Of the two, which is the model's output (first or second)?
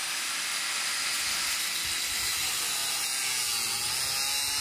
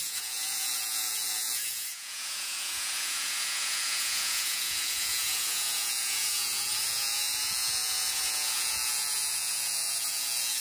second